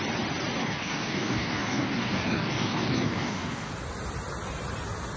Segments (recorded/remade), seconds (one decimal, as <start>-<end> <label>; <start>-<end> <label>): 0.0-0.6 recorded; 0.6-3.7 remade; 3.7-5.2 recorded